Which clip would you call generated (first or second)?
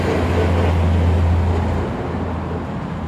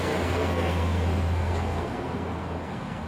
second